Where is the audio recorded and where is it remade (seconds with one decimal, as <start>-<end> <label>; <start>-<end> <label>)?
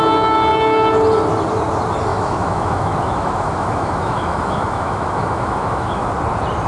0.0-2.1 recorded; 2.1-6.1 remade; 6.1-6.7 recorded